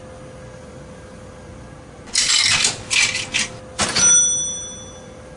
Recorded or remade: recorded